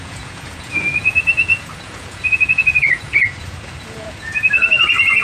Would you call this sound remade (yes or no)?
yes